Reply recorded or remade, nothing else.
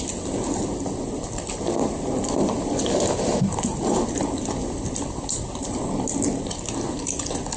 recorded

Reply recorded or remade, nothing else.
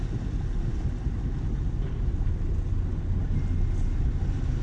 recorded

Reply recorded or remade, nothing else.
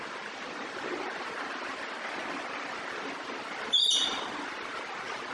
recorded